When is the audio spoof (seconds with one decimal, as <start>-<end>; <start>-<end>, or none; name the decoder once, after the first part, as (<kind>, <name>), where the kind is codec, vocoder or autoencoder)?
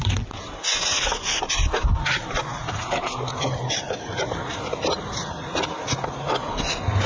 3.0-4.6 (vocoder, BigVGAN v2)